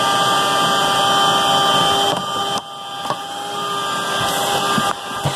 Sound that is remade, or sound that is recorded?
recorded